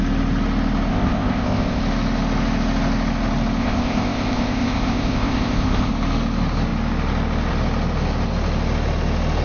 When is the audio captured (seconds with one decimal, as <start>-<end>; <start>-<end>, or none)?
0.0-0.9; 1.8-3.6; 5.9-9.4

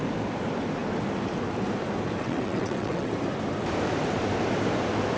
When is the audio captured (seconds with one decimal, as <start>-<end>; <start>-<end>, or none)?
0.0-2.2; 3.1-5.2

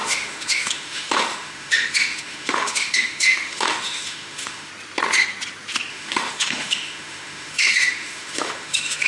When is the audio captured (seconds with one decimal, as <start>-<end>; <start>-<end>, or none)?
4.7-5.9

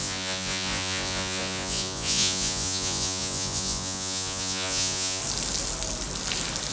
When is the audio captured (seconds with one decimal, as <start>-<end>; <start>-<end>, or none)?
5.2-6.7